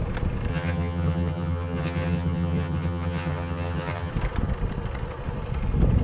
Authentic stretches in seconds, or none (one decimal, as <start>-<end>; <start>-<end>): 0.0-0.5; 4.1-6.0